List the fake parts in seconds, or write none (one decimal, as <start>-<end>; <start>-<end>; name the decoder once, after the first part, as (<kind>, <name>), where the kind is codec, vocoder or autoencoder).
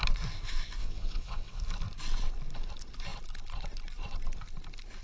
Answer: 0.8-1.6 (vocoder, WaveNeXt)